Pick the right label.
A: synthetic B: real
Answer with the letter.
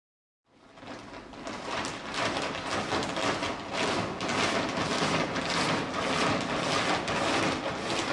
B